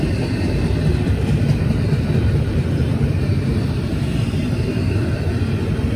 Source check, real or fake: fake